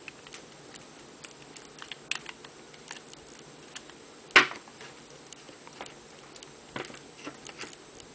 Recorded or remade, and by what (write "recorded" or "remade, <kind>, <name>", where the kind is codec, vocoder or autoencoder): recorded